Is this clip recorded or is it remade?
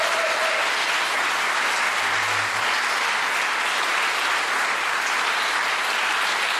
recorded